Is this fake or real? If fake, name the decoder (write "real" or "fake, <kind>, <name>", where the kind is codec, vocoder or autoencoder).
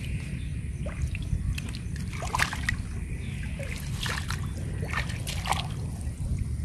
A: real